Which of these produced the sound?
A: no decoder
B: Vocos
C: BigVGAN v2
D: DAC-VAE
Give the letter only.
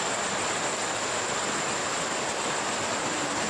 A